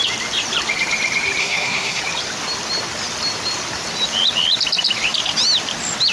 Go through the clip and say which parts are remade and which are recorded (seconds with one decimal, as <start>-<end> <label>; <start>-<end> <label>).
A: 0.0-1.4 recorded; 1.4-2.0 remade; 2.0-6.1 recorded